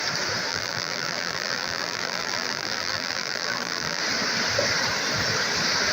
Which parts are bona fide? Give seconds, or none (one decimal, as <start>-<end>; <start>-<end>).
0.0-0.5; 4.0-5.9